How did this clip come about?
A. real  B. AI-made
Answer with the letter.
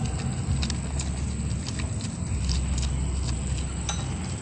A